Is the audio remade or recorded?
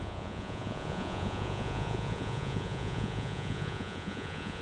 remade